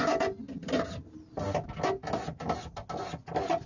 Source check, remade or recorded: recorded